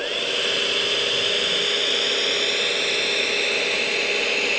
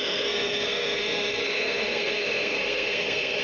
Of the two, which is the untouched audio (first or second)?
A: first